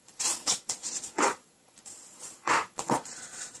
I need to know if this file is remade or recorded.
remade